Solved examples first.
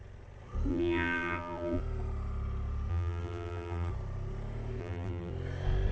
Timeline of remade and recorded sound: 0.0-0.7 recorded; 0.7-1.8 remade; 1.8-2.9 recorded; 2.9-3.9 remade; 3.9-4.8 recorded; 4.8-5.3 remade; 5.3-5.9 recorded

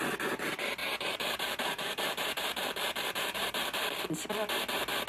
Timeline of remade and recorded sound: 0.0-0.8 recorded; 0.8-3.9 remade; 3.9-5.1 recorded

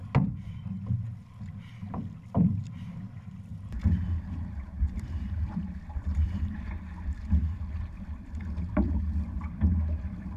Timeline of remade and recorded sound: 0.0-3.5 recorded; 3.5-6.6 remade; 6.6-10.4 recorded

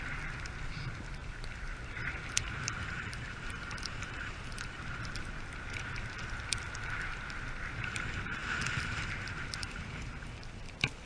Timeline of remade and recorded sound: 0.0-1.2 recorded; 1.2-4.8 remade; 4.8-8.4 recorded; 8.4-9.9 remade; 9.9-11.1 recorded

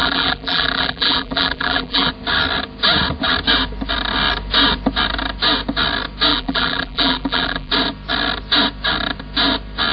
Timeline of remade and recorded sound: 0.0-2.1 remade; 2.1-6.3 recorded; 6.3-7.7 remade; 7.7-9.9 recorded

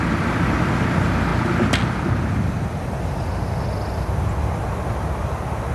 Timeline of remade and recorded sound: 0.0-5.7 recorded

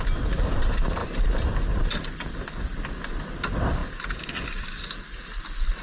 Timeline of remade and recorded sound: 0.0-5.8 recorded

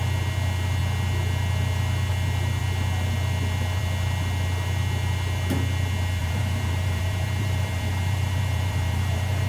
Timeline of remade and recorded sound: 0.0-6.2 recorded; 6.2-9.5 remade